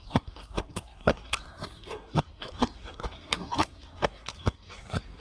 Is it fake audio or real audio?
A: fake